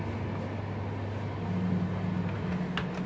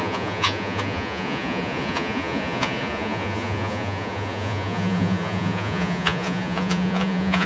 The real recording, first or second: first